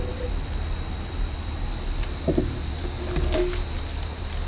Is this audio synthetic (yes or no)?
no